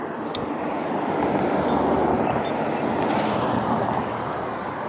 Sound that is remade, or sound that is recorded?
recorded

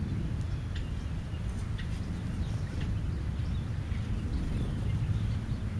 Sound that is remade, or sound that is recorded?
recorded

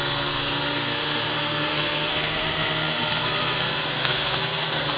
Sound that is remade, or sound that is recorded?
remade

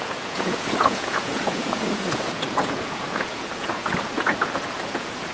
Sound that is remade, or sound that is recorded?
remade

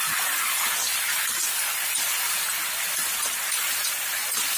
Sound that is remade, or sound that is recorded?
recorded